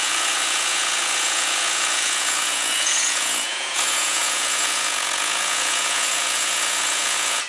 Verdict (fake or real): fake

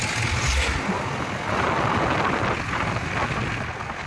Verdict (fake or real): real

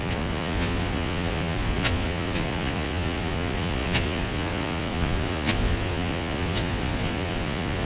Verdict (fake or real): fake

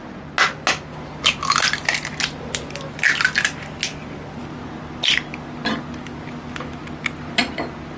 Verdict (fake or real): real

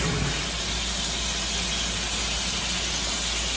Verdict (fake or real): real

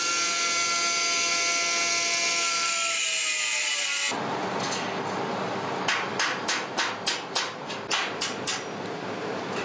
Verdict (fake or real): real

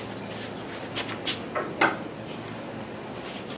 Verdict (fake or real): real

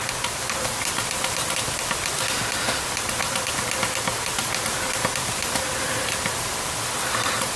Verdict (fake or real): real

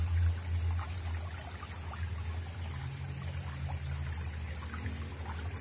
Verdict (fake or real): real